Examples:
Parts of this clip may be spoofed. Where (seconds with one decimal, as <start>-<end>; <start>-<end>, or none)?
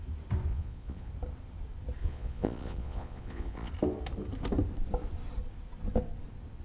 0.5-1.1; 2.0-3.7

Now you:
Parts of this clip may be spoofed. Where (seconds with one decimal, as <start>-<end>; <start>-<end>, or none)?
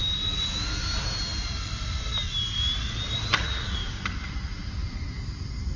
3.4-3.8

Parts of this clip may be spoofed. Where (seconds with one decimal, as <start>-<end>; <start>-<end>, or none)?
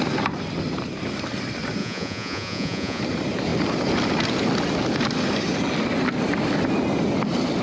1.8-3.0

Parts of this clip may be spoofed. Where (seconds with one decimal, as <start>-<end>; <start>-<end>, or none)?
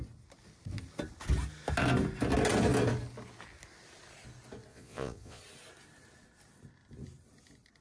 4.7-5.4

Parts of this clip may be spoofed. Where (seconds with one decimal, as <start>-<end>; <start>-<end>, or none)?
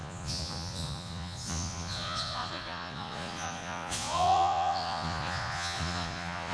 0.0-6.5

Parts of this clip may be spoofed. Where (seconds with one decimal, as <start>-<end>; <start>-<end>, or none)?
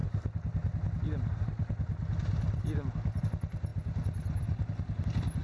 none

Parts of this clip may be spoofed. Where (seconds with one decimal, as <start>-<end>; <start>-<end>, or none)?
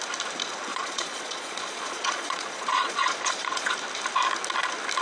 0.7-3.7